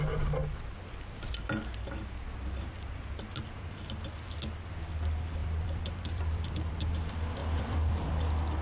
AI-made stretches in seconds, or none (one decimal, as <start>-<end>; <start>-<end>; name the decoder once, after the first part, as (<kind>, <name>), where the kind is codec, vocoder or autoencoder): 5.4-6.8 (vocoder, BigVGAN v2); 7.4-7.9